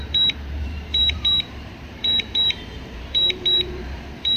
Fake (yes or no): yes